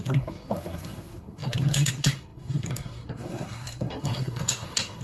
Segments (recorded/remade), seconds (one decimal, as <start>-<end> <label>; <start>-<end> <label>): 0.0-5.0 remade

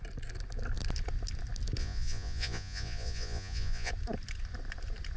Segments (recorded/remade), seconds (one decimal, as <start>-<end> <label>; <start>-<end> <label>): 0.0-1.8 recorded; 1.8-3.9 remade; 3.9-5.2 recorded

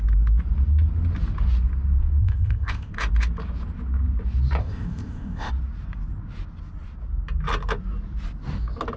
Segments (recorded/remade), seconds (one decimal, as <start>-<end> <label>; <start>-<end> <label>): 0.0-2.2 recorded; 2.2-2.9 remade; 2.9-4.6 recorded; 4.6-5.5 remade; 5.5-9.0 recorded

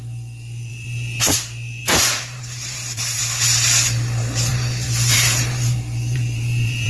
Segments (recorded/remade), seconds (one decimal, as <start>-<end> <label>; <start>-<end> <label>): 0.0-0.7 recorded; 0.7-1.2 remade; 1.2-1.8 recorded; 1.8-3.2 remade; 3.2-4.5 recorded; 4.5-6.9 remade

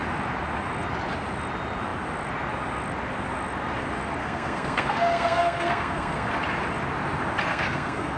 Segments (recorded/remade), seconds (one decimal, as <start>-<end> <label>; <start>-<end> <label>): 0.0-4.2 recorded; 4.2-6.3 remade; 6.3-7.5 recorded; 7.5-8.2 remade

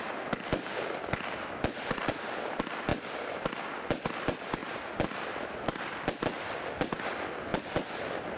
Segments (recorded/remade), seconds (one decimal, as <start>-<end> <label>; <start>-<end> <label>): 0.0-4.6 recorded; 4.6-5.9 remade; 5.9-7.5 recorded; 7.5-8.0 remade; 8.0-8.4 recorded